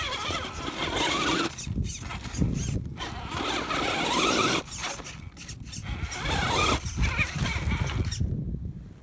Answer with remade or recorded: recorded